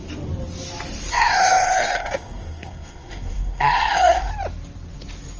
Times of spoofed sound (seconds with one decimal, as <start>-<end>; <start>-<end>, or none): 1.1-4.3